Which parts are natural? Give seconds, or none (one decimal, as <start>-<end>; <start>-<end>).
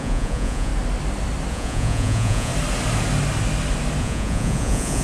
0.7-1.5; 2.5-4.0